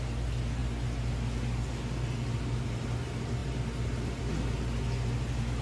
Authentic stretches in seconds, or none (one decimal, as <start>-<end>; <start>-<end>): 0.0-5.6